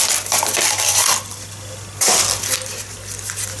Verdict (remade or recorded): recorded